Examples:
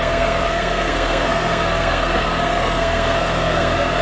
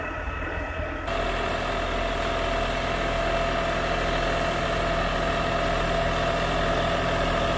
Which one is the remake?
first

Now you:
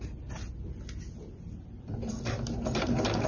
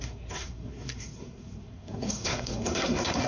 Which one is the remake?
second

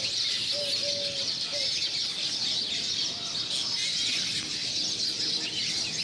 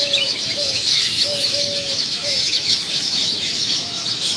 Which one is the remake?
second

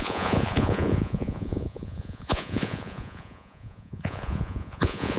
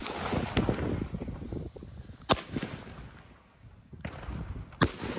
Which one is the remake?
first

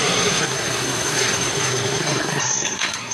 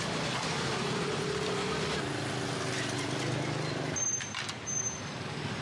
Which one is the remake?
first